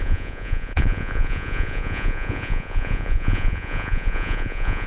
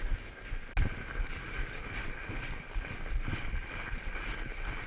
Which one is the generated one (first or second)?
first